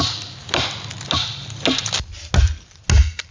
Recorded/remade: recorded